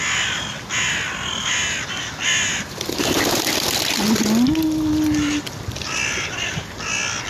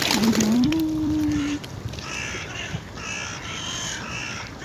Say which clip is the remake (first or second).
second